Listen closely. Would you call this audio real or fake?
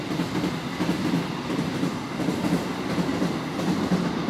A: real